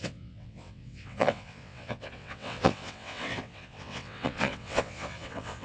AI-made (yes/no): yes